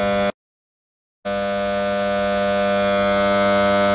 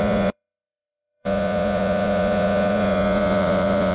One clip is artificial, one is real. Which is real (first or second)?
first